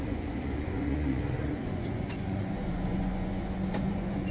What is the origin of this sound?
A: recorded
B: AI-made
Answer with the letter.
B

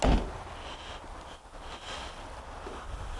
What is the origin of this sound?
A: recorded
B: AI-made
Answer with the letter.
A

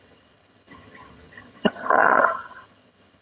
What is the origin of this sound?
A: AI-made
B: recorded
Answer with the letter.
A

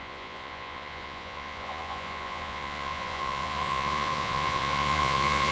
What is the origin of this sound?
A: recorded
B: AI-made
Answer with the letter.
B